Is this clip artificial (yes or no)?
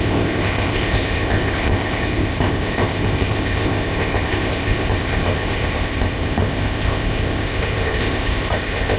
yes